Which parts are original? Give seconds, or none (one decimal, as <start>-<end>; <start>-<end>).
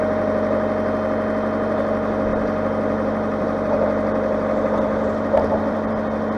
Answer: 0.0-2.3; 5.9-6.4